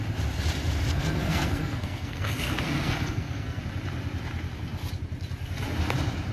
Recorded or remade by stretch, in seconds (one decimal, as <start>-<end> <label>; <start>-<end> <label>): 0.0-0.9 recorded; 0.9-3.6 remade; 3.6-6.3 recorded